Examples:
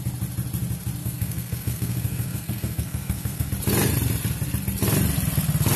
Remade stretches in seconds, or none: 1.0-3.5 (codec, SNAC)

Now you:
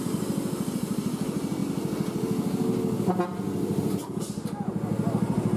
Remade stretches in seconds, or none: none

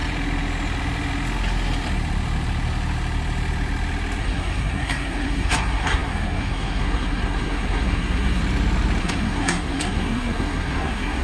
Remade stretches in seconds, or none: 4.2-8.4 (codec, SNAC); 9.0-11.2

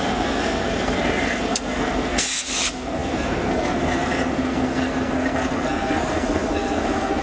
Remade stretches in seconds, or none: 0.0-7.2 (codec, SNAC)

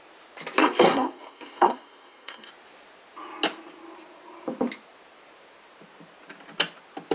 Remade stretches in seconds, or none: 0.6-2.5 (codec, SNAC)

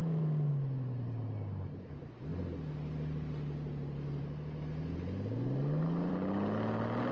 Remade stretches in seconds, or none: 0.0-0.5 (codec, SNAC)